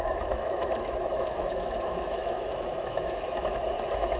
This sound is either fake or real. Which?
fake